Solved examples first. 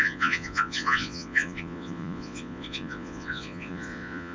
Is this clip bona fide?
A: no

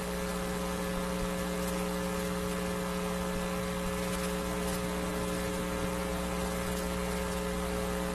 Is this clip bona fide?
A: yes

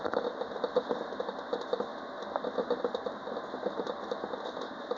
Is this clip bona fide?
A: yes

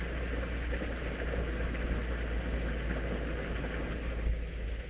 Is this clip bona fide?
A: yes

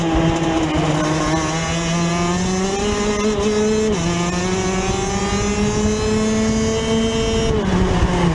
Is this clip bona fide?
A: yes